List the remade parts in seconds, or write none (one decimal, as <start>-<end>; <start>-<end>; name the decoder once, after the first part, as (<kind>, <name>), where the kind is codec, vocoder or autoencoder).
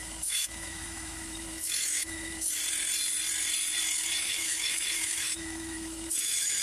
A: 0.0-2.6 (autoencoder, DAC-VAE); 4.2-6.6